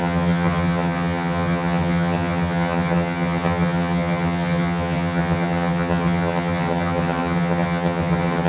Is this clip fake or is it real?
fake